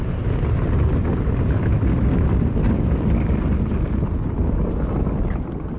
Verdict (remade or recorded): recorded